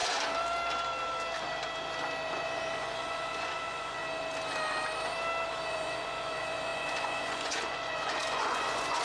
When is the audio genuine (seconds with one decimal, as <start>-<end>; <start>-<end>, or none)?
0.0-2.3; 4.0-5.7